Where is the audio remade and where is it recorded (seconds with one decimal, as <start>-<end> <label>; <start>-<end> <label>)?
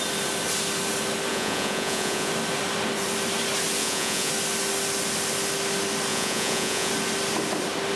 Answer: 0.0-1.3 recorded; 1.3-2.3 remade; 2.3-3.8 recorded; 3.8-4.3 remade; 4.3-6.1 recorded; 6.1-6.9 remade; 6.9-8.0 recorded